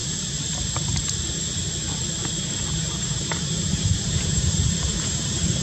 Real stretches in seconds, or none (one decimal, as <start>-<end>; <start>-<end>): 0.0-2.7